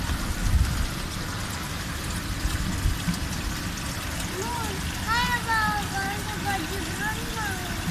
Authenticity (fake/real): real